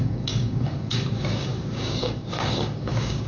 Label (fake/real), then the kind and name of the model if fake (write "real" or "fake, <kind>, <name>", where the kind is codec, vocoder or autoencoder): fake, codec, DAC